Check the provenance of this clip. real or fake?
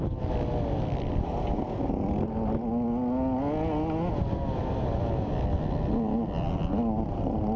real